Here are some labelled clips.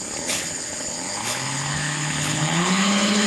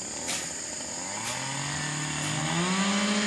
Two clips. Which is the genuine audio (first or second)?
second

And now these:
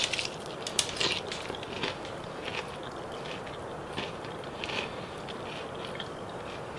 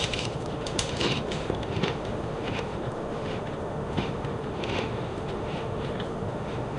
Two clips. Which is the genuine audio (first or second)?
first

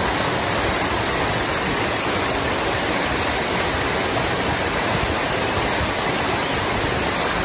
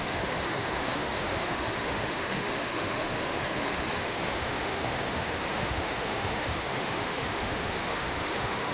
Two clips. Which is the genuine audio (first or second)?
first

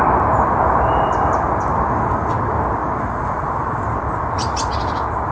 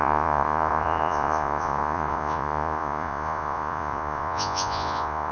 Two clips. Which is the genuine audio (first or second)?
first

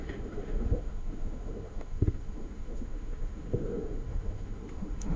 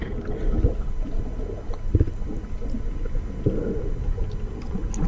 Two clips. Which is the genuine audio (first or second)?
second